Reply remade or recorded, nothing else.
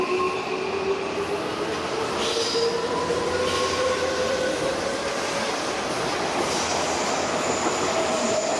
recorded